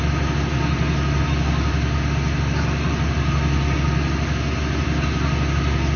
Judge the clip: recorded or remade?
recorded